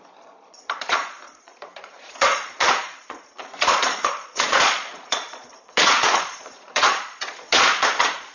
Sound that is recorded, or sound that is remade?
remade